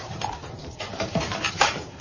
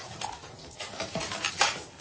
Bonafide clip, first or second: second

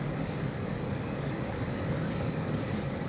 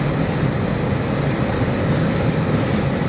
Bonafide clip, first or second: second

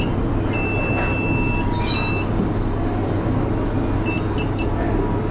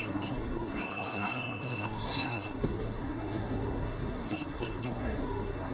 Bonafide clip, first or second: first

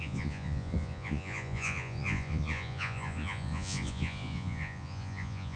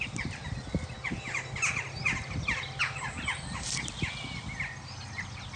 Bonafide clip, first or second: second